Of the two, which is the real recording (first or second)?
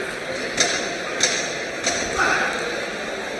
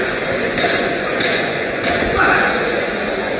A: first